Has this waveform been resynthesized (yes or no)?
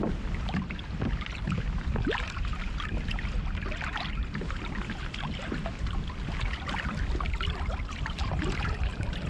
no